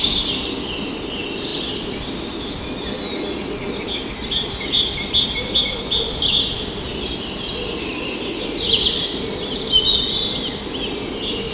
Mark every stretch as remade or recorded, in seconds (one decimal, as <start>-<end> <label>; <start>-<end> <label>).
0.0-11.5 recorded